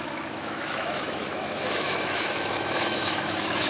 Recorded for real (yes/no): no